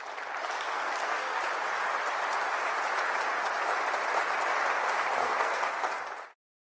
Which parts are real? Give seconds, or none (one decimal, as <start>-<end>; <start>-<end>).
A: 0.0-0.7; 1.4-5.2; 5.8-6.7

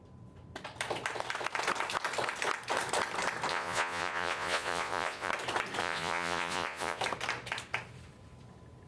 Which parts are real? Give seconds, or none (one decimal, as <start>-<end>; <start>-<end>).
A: 0.0-3.5; 5.3-5.8; 7.0-8.9

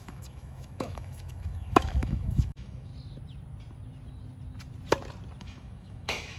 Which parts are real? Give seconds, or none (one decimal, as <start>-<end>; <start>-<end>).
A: 2.9-5.4

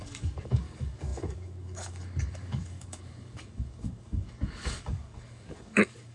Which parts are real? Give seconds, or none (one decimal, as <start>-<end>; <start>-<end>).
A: none

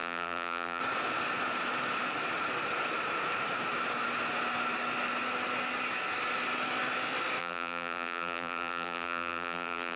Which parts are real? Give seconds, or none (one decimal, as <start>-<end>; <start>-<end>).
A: 0.8-7.4

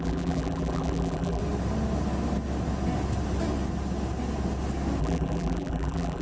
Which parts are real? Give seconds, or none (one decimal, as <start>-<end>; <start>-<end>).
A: 1.4-5.0